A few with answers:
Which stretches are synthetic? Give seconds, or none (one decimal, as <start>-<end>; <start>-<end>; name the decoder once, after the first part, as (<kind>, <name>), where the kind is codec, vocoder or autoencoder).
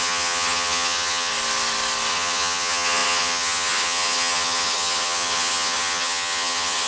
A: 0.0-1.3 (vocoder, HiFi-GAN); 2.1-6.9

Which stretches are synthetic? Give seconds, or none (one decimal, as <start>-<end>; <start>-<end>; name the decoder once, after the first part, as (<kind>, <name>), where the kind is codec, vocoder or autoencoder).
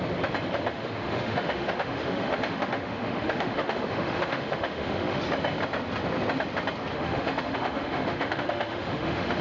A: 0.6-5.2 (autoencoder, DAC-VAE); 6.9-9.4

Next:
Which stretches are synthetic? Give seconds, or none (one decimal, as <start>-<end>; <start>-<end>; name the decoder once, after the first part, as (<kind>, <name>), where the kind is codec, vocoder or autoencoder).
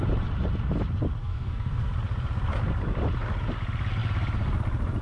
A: 1.2-1.9 (codec, SNAC)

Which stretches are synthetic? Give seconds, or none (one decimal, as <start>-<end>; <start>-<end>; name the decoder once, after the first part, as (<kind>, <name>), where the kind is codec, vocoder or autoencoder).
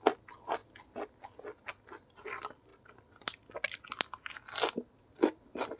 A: none